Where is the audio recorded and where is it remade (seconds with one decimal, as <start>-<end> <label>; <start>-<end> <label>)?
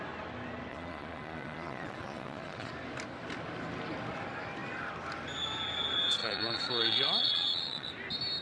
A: 0.0-0.7 recorded; 0.7-2.7 remade; 2.7-6.2 recorded; 6.2-7.9 remade; 7.9-8.4 recorded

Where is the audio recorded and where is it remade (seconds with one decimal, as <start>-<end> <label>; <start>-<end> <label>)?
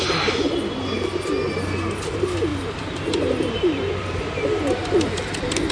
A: 0.0-5.7 recorded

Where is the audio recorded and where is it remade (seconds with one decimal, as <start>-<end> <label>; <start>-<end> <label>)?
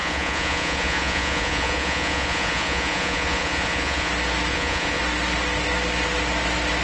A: 0.0-4.1 remade; 4.1-4.5 recorded; 4.5-5.0 remade; 5.0-6.8 recorded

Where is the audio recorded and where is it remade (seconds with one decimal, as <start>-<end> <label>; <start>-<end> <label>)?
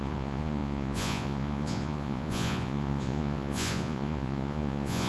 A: 0.0-5.1 remade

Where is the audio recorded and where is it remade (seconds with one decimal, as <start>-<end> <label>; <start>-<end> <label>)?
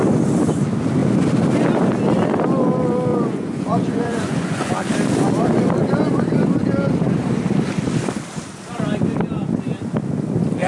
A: 0.0-3.1 recorded; 3.1-4.7 remade; 4.7-10.7 recorded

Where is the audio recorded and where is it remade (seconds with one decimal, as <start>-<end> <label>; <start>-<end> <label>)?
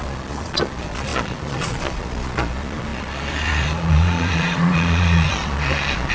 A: 0.0-6.1 remade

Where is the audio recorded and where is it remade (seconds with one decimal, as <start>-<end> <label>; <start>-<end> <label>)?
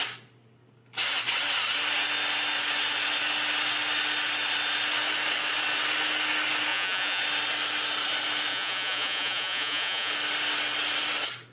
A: 0.0-6.7 recorded; 6.7-7.2 remade; 7.2-8.5 recorded; 8.5-10.1 remade; 10.1-11.5 recorded